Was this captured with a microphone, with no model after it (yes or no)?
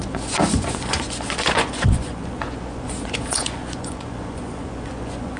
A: no